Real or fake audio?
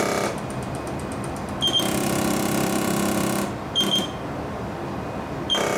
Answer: fake